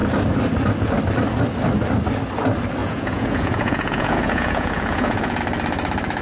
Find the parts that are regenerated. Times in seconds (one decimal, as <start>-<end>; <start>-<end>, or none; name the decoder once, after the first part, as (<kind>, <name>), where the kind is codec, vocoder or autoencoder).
2.8-5.4 (vocoder, Vocos)